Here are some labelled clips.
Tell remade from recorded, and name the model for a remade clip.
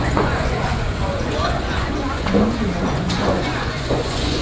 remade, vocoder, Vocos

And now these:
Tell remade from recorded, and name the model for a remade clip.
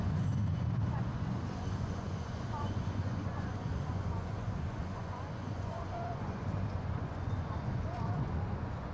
remade, vocoder, Vocos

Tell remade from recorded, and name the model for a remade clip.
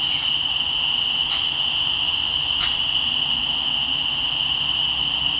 recorded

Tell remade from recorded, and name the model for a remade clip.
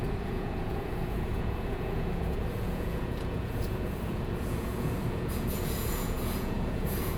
remade, vocoder, Vocos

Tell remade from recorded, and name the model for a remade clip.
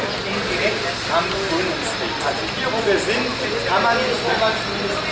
recorded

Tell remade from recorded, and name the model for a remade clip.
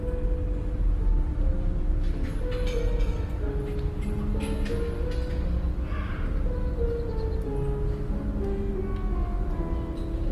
recorded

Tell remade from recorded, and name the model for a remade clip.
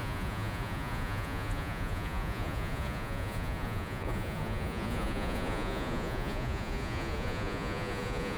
remade, vocoder, Vocos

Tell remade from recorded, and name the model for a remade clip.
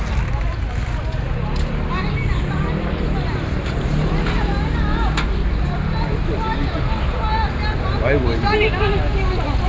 recorded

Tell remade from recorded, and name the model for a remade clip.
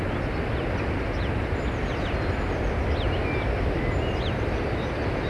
recorded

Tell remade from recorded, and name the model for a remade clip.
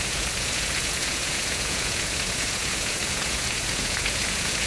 remade, vocoder, Vocos